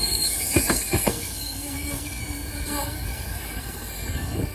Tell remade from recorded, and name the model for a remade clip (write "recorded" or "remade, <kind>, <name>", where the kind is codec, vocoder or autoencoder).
remade, codec, SNAC